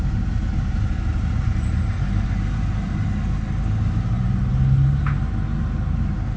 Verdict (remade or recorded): recorded